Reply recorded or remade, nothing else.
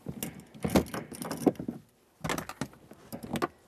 recorded